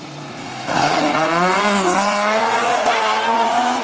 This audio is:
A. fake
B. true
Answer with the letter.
A